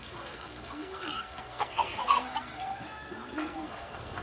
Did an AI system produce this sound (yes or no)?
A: yes